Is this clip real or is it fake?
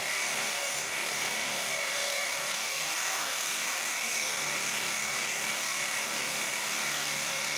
fake